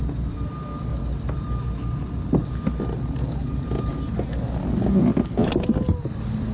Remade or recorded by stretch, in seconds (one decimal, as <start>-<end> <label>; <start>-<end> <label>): 0.0-6.5 recorded